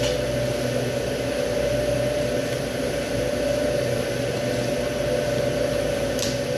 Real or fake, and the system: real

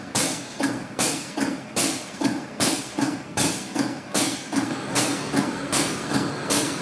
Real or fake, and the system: fake, codec, SNAC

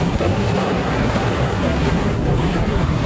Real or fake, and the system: fake, codec, SNAC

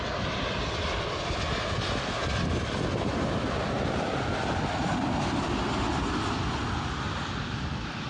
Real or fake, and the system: real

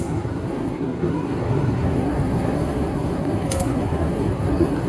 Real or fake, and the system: fake, codec, SNAC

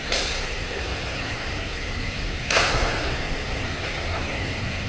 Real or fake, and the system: fake, codec, SNAC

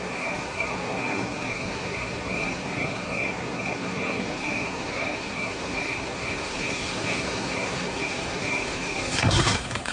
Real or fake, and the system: fake, codec, SNAC